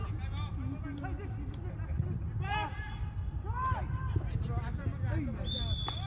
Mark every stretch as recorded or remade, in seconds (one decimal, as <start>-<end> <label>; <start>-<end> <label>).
0.0-6.1 recorded